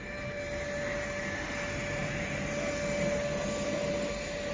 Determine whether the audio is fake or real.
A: real